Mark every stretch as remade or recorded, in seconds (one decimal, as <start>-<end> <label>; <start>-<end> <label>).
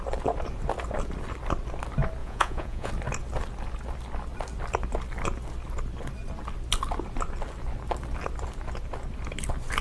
0.0-2.2 recorded; 2.2-2.9 remade; 2.9-9.8 recorded